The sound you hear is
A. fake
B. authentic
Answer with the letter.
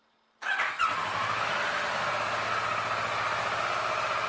B